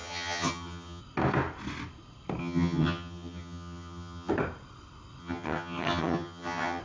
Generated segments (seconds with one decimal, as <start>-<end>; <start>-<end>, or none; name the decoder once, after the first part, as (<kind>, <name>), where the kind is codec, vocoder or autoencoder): 0.0-1.0 (vocoder, HiFi-GAN); 2.4-4.3; 5.2-6.8